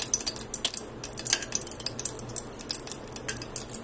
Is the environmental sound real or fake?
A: real